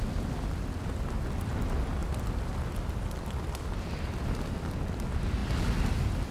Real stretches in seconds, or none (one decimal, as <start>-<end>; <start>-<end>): 0.0-6.3